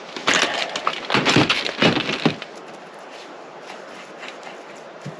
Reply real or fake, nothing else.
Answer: real